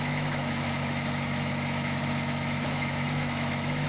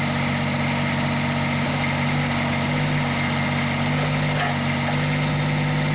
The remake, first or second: first